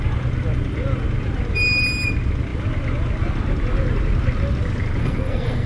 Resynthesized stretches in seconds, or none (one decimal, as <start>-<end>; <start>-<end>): 5.0-5.7